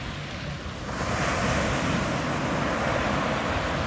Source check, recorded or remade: recorded